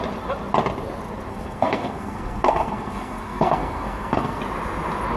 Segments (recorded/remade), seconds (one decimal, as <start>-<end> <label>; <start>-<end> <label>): 0.0-1.3 recorded; 1.3-4.4 remade; 4.4-5.2 recorded